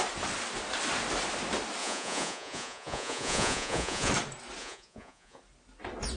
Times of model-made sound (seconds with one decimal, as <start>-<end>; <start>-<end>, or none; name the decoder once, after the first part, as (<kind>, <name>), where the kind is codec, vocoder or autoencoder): 1.8-4.1 (vocoder, Vocos); 4.6-5.4